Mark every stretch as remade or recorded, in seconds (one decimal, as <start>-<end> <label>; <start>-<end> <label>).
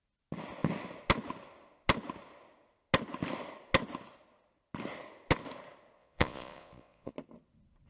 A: 0.0-6.0 recorded; 6.0-7.1 remade; 7.1-7.9 recorded